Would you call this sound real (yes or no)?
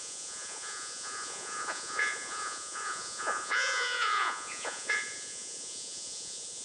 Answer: no